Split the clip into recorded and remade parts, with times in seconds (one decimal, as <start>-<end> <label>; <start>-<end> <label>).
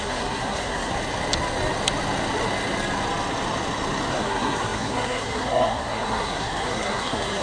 0.0-0.9 remade; 0.9-4.1 recorded; 4.1-7.4 remade